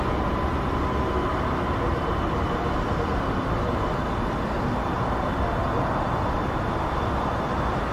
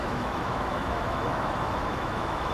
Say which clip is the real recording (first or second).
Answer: first